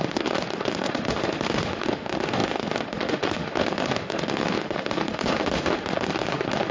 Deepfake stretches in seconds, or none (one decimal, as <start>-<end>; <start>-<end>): 0.0-6.7